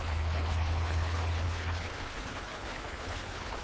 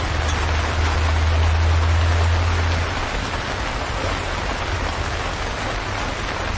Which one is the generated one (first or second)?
first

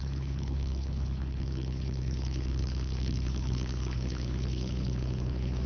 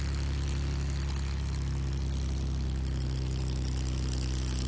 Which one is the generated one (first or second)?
first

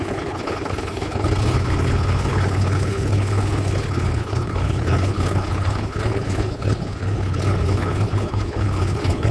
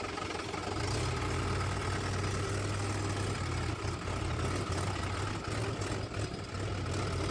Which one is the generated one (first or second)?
first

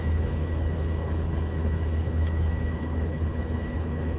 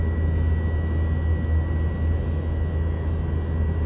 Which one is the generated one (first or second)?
first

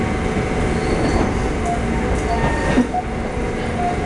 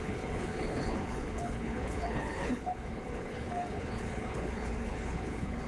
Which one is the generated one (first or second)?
second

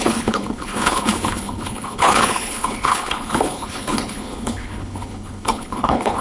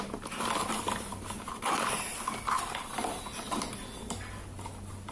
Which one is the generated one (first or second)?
first